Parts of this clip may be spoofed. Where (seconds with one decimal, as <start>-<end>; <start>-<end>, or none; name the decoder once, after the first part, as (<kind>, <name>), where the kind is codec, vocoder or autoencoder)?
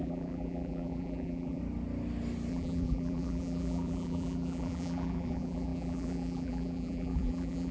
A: 0.0-1.6 (vocoder, BigVGAN v2); 2.5-7.7